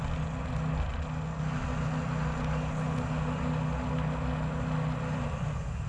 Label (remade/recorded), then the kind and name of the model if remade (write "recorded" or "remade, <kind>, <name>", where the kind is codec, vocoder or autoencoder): recorded